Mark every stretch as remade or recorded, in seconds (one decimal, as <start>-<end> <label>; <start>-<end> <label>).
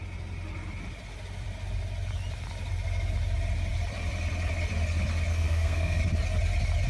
0.0-5.3 recorded; 5.3-6.0 remade; 6.0-6.9 recorded